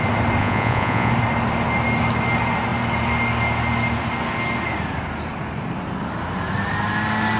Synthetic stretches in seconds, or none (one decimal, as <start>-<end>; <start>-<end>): 0.4-1.1